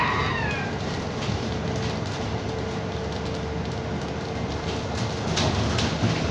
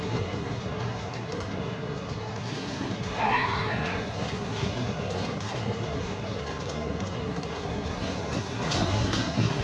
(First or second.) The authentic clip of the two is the first